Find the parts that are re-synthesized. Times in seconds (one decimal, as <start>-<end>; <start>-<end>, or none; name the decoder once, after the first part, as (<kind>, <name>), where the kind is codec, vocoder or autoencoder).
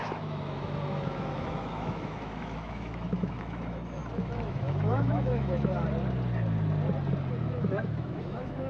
0.0-5.7 (autoencoder, DAC-VAE); 7.4-8.7